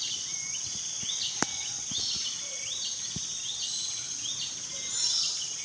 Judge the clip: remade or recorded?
recorded